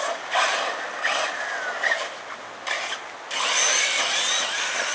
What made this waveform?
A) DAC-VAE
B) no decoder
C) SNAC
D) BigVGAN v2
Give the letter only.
B